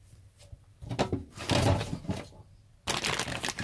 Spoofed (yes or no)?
no